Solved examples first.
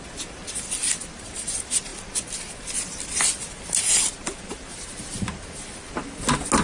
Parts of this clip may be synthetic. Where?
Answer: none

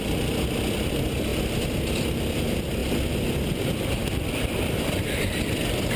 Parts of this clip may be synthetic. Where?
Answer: 0.0-1.3 (vocoder, BigVGAN v2); 1.8-2.8; 3.6-6.0

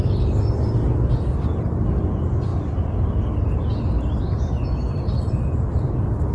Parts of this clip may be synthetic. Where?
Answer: none

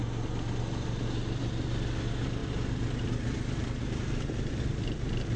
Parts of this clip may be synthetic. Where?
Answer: 1.4-3.6 (vocoder, BigVGAN v2); 4.5-5.4

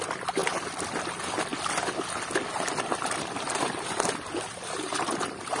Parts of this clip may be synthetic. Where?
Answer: 0.0-0.4 (vocoder, BigVGAN v2); 0.9-1.5; 2.5-5.6

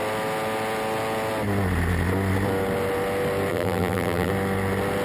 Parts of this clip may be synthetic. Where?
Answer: 3.5-4.3 (vocoder, BigVGAN v2)

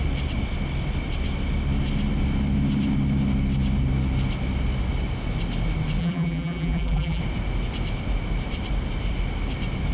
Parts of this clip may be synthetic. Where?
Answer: 6.0-7.2 (vocoder, BigVGAN v2)